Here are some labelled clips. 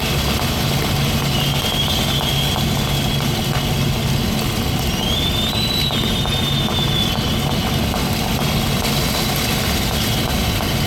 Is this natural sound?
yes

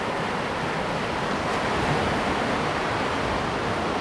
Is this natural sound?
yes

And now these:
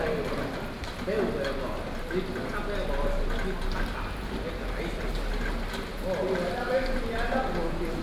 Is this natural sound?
yes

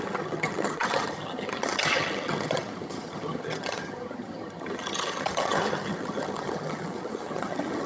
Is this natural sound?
no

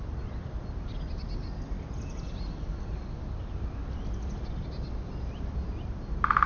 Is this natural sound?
yes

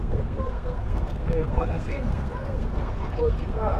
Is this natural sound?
no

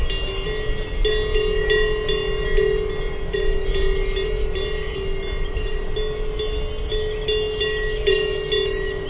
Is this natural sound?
yes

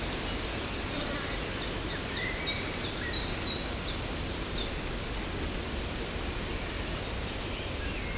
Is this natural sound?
yes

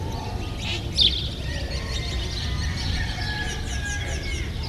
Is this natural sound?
yes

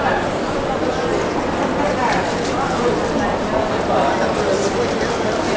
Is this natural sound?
yes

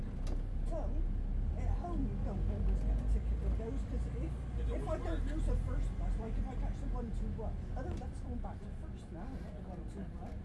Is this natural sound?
yes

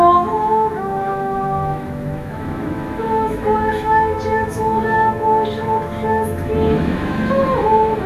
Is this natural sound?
no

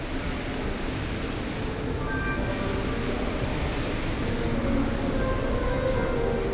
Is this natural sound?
yes